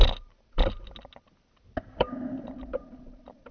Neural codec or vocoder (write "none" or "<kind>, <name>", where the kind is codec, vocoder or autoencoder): none